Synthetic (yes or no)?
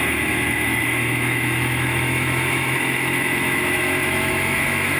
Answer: yes